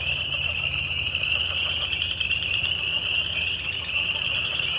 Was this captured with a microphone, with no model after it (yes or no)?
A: no